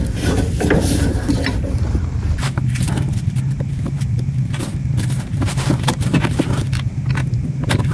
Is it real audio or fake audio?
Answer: fake